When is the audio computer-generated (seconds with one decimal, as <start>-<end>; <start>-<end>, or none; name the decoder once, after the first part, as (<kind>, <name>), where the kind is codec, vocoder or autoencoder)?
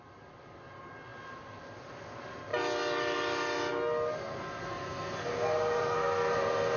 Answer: 4.2-6.8 (codec, SNAC)